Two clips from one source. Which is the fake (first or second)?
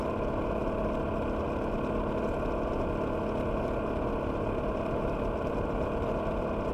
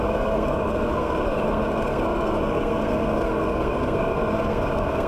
second